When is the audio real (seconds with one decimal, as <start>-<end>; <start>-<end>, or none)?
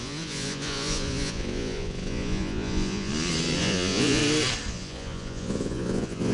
3.1-3.6; 4.2-4.7